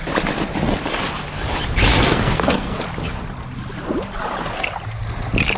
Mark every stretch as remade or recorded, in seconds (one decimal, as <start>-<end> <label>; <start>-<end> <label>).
0.0-1.9 recorded; 1.9-2.8 remade; 2.8-5.6 recorded